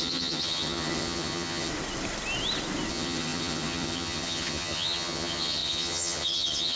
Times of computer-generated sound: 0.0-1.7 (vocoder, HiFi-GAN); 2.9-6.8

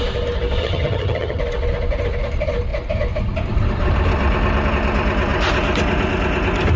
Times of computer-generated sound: 0.6-1.4 (vocoder, HiFi-GAN)

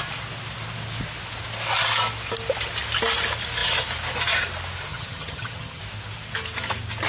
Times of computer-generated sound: 4.9-5.8 (vocoder, HiFi-GAN)

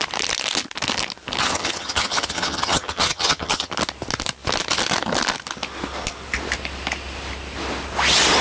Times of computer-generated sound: 1.4-3.7 (vocoder, HiFi-GAN)